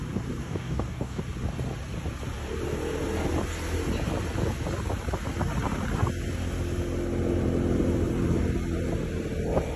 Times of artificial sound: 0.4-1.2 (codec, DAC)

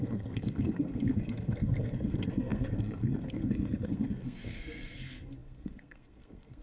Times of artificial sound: 0.0-6.6 (codec, SNAC)

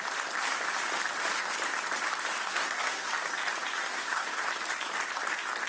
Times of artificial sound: 2.4-3.1 (codec, SNAC); 3.8-4.3

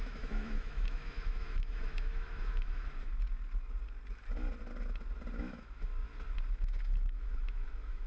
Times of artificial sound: 0.0-3.1 (autoencoder, DAC-VAE); 5.4-5.9; 6.5-8.1